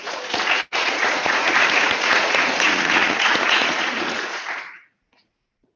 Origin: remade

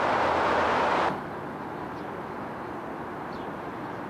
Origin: recorded